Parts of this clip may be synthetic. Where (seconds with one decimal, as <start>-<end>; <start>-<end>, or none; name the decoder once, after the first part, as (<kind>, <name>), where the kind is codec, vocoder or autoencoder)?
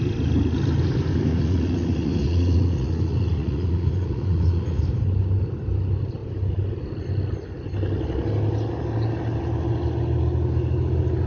1.3-4.8 (vocoder, Vocos)